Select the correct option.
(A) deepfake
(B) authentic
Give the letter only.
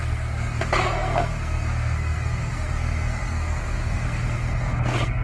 A